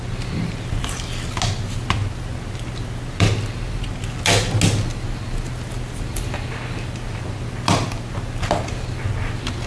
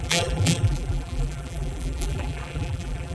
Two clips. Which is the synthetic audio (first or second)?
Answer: second